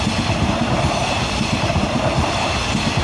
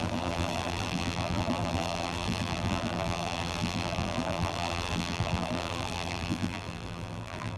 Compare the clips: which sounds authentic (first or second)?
first